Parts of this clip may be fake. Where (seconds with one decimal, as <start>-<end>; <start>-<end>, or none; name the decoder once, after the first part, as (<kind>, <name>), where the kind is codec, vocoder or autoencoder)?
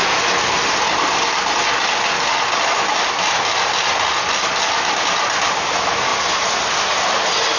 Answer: none